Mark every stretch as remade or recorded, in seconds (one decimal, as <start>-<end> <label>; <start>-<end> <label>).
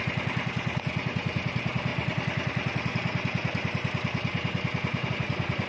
0.0-5.7 recorded